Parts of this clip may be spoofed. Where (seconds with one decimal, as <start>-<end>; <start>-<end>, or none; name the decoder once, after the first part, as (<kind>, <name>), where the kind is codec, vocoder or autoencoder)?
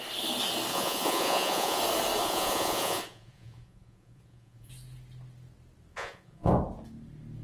0.7-1.8 (vocoder, Vocos); 2.2-4.7; 5.9-6.5